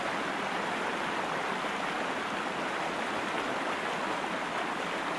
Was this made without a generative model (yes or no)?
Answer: yes